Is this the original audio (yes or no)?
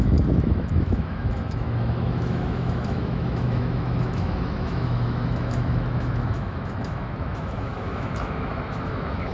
no